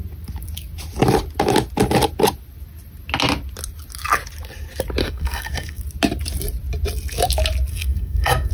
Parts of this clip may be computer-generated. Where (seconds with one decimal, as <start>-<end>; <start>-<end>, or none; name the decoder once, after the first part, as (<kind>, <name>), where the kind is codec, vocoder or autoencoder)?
5.0-5.8 (codec, SNAC); 7.7-8.5